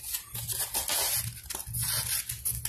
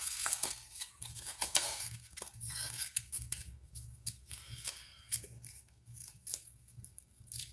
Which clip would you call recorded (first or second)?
first